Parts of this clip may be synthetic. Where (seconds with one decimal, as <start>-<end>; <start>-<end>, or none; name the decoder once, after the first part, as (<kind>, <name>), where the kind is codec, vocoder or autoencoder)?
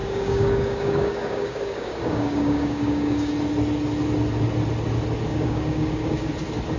0.0-3.3 (codec, DAC); 5.3-6.3